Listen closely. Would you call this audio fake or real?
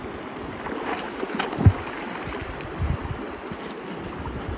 real